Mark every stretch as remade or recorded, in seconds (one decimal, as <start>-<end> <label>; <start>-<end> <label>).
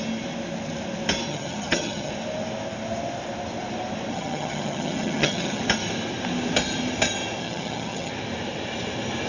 0.0-1.3 recorded; 1.3-2.1 remade; 2.1-4.1 recorded; 4.1-5.6 remade; 5.6-7.4 recorded; 7.4-8.1 remade; 8.1-9.3 recorded